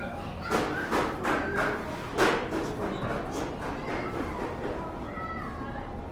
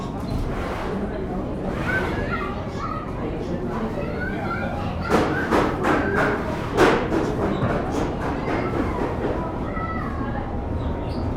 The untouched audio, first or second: first